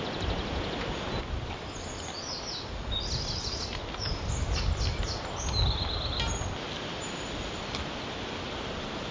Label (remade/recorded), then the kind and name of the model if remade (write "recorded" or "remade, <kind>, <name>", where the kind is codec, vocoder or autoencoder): recorded